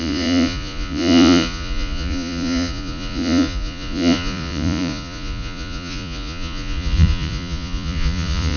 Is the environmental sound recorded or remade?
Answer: remade